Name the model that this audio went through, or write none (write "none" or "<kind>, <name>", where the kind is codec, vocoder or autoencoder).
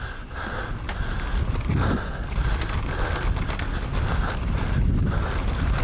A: none